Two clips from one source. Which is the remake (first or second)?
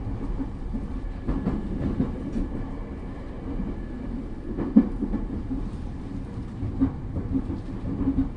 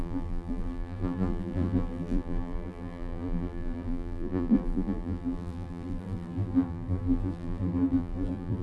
second